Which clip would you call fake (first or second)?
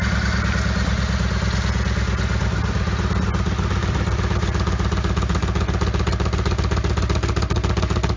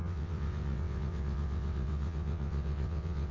second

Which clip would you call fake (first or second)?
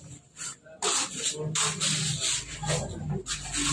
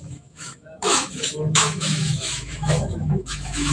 second